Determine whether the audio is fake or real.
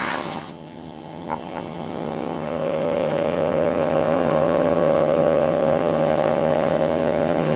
fake